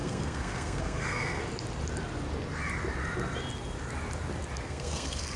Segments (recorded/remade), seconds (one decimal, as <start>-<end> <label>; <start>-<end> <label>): 0.0-1.4 remade; 1.4-4.6 recorded; 4.6-5.4 remade